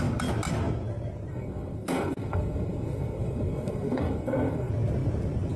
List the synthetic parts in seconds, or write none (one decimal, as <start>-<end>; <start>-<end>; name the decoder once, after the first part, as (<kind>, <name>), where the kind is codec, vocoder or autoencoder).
1.3-4.7 (codec, SNAC)